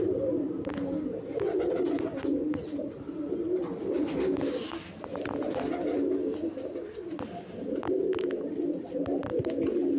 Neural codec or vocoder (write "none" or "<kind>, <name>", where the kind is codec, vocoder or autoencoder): none